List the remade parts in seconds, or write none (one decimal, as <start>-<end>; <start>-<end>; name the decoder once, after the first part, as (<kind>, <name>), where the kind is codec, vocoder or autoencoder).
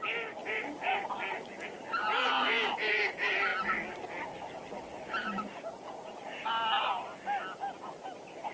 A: 0.4-0.9 (vocoder, Vocos); 2.0-3.1; 5.2-6.5